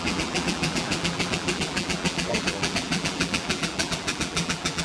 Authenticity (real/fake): fake